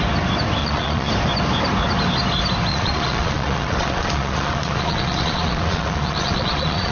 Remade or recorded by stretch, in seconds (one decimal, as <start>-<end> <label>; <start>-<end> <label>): 0.0-0.6 recorded; 0.6-1.1 remade; 1.1-2.7 recorded; 2.7-6.9 remade

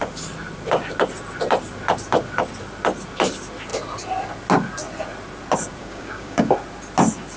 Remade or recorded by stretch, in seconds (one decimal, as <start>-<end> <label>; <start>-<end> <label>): 0.0-5.8 recorded; 5.8-6.5 remade; 6.5-7.4 recorded

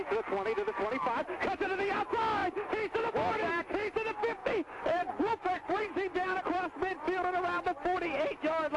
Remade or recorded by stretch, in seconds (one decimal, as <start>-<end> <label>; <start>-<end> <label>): 0.0-4.4 recorded; 4.4-6.4 remade; 6.4-8.8 recorded